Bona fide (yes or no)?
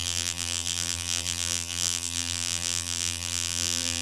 no